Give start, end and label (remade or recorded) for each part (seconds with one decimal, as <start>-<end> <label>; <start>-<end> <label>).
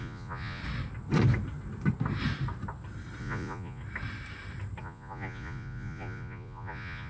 0.0-0.6 remade; 0.6-3.2 recorded; 3.2-3.8 remade; 3.8-4.8 recorded; 4.8-7.1 remade